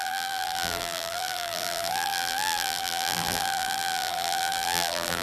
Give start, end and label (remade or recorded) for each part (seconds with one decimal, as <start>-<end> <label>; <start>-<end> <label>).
0.0-5.2 remade